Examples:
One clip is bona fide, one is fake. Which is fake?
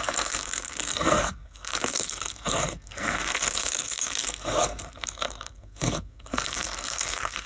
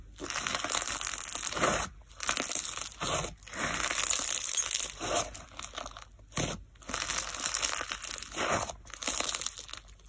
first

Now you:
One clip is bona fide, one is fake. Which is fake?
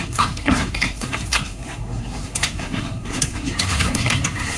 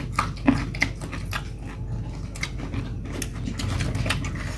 first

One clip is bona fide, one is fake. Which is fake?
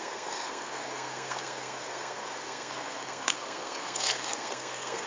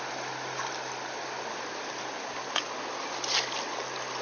first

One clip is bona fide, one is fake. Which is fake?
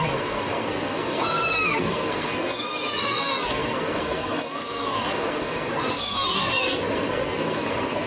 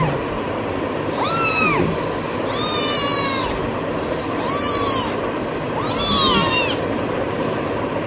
first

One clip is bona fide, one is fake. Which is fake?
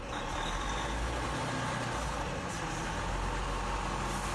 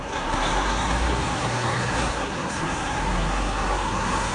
second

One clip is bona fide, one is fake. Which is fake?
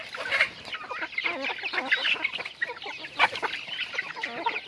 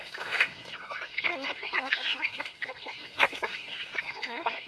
second